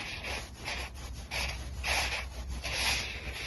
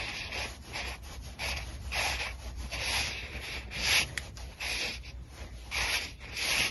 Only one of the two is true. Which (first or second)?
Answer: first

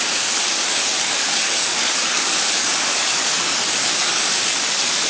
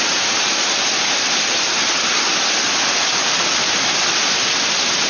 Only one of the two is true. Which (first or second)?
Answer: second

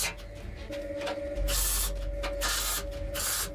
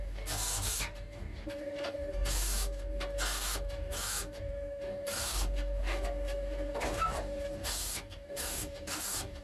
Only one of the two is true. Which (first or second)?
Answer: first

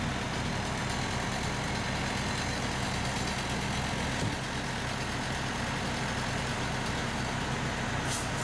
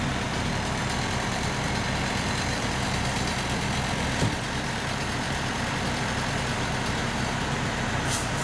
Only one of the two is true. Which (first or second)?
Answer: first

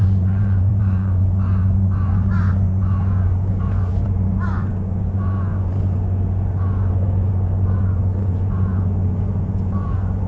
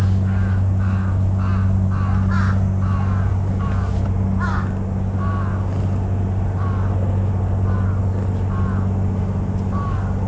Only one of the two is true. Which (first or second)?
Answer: second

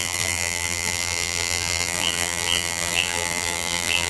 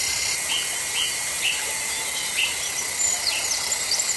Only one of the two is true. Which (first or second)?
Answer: second